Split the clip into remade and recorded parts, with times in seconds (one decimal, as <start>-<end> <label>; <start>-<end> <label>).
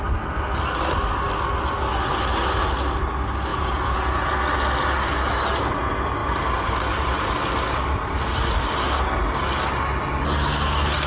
0.0-3.5 recorded; 3.5-4.3 remade; 4.3-11.1 recorded